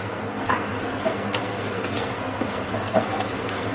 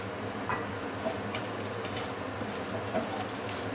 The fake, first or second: first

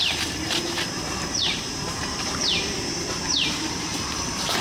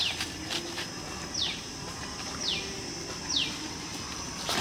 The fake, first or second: first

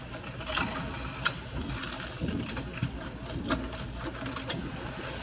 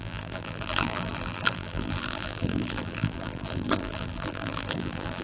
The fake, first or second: second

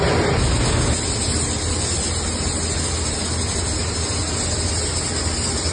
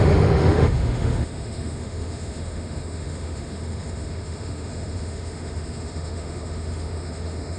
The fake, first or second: second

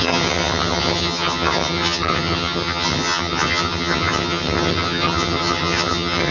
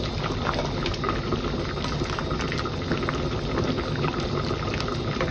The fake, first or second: first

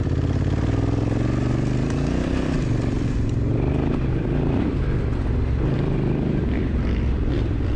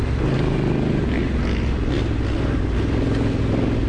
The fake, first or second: first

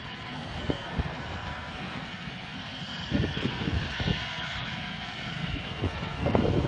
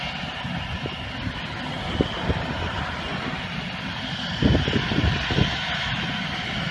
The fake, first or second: first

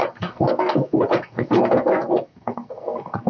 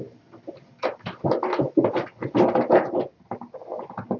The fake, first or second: first